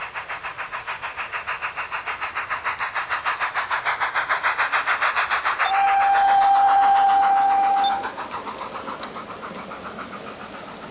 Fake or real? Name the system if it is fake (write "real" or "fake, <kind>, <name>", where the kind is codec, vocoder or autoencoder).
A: real